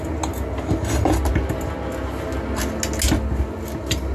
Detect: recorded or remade recorded